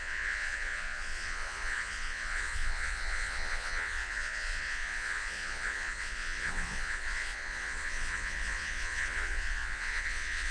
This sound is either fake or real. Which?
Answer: fake